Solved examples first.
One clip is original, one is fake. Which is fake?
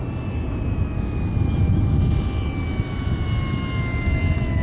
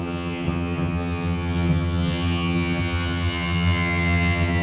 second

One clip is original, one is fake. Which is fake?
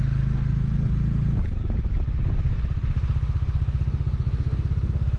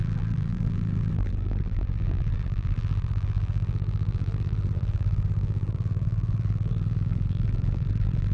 second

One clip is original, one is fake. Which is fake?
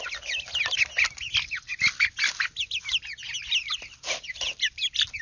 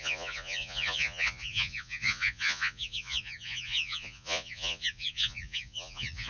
second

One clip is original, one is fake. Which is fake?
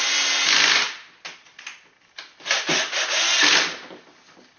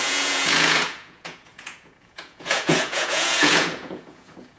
second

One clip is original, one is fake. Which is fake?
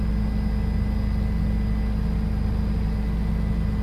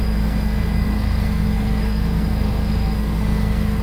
second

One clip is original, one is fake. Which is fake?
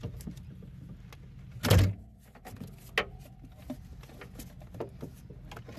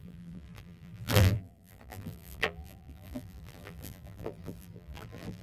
second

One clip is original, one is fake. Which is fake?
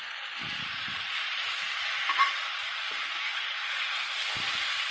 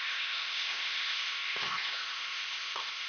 second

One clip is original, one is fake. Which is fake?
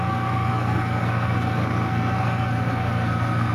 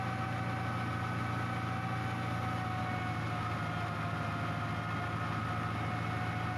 first